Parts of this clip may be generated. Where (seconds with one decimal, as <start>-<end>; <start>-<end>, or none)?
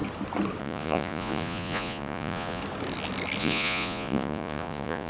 0.6-2.6; 3.4-5.1